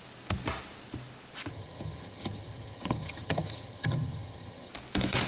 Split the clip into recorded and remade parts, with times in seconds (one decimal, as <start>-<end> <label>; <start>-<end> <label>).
0.0-1.5 recorded; 1.5-4.7 remade; 4.7-5.3 recorded